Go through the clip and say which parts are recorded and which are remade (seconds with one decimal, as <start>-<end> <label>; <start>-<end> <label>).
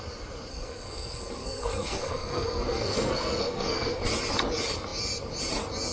0.0-0.5 recorded; 0.5-4.0 remade; 4.0-5.9 recorded